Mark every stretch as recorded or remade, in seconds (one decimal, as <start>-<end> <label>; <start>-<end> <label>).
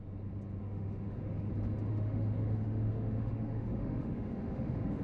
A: 0.0-0.6 recorded; 0.6-1.5 remade; 1.5-1.9 recorded; 1.9-5.0 remade